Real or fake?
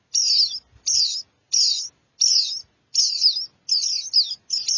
real